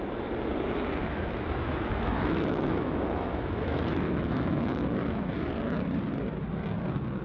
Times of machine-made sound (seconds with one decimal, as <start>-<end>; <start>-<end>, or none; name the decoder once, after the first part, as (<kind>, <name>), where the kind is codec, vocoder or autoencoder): 1.0-5.3 (autoencoder, DAC-VAE)